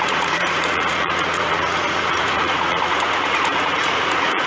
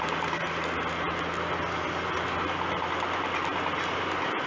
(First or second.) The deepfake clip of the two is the first